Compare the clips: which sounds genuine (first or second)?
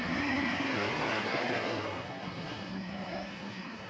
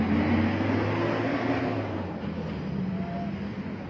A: second